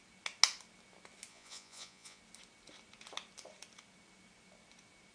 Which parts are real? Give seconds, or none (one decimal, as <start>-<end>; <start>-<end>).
0.0-1.3; 2.2-5.1